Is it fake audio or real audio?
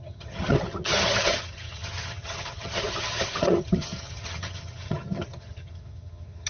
fake